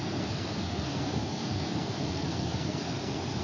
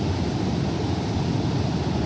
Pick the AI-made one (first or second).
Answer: first